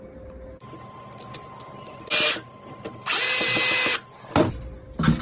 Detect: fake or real real